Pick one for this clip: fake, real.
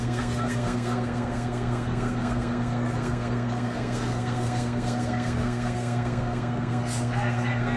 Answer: fake